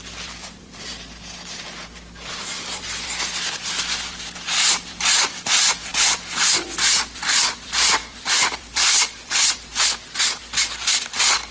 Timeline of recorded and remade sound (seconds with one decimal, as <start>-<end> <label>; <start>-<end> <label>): 0.0-0.9 remade; 0.9-2.3 recorded; 2.3-11.5 remade